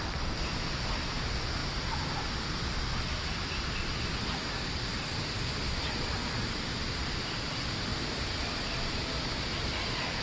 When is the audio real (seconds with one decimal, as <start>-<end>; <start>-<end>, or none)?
0.0-10.2